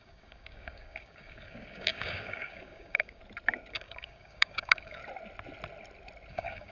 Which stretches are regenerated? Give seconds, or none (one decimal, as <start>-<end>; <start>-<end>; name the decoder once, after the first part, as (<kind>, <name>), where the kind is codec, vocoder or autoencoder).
0.0-3.2 (codec, DAC); 3.7-5.0; 6.3-6.7